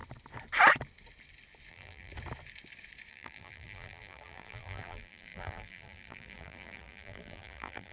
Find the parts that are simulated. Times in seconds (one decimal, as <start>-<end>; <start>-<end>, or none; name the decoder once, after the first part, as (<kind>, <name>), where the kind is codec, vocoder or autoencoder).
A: 1.7-2.1 (vocoder, BigVGAN v2); 3.1-7.9